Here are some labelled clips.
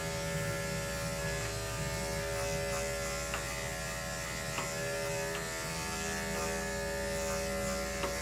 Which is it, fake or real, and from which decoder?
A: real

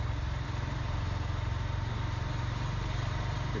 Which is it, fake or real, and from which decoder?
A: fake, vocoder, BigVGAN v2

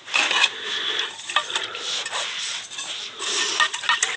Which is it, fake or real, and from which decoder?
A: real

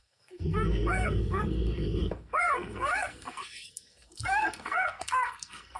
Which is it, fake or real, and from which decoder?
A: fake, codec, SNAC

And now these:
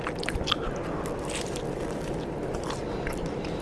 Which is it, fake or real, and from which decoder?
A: real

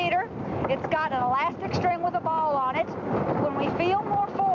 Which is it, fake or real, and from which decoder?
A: real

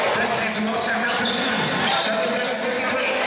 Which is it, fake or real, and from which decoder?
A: real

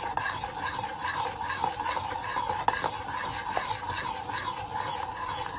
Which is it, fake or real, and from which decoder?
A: real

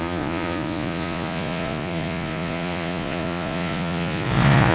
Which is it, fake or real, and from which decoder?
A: fake, vocoder, Vocos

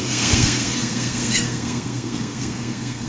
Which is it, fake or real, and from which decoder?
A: fake, codec, SNAC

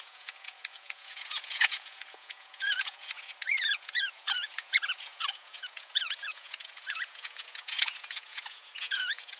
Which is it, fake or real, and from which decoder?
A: fake, vocoder, Vocos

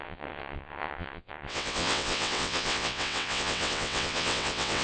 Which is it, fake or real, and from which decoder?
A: fake, vocoder, WaveNeXt